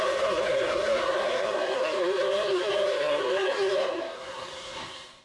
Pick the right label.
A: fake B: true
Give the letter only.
A